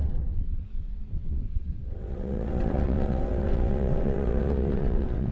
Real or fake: fake